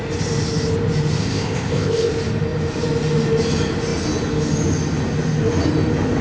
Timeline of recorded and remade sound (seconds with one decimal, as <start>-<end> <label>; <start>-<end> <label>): 0.0-1.2 recorded; 1.2-2.1 remade; 2.1-6.2 recorded